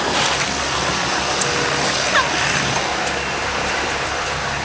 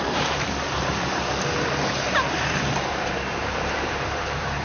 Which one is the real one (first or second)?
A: first